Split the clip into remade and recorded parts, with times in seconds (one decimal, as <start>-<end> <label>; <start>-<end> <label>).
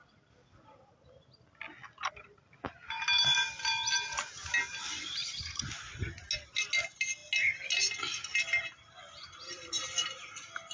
0.0-10.7 recorded